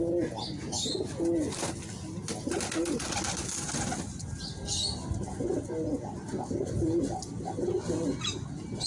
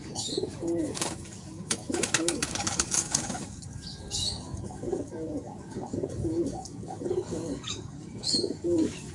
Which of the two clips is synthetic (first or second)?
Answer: second